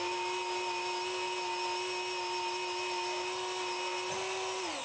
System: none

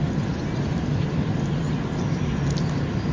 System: none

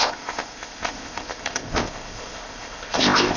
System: codec, ZipCodec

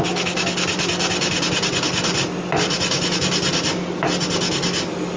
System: none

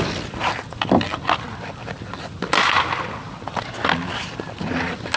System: none